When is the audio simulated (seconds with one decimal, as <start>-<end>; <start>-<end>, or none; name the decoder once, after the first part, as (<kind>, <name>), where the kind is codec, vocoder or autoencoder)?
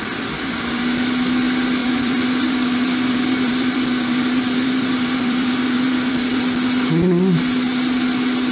1.8-6.4 (vocoder, BigVGAN v2)